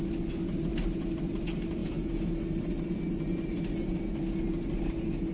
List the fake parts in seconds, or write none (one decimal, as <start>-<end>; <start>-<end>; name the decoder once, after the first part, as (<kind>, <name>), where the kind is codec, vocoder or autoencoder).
none